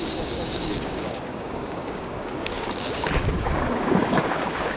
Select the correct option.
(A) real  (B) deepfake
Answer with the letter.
B